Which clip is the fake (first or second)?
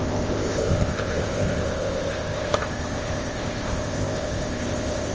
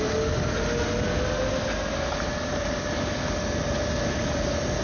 first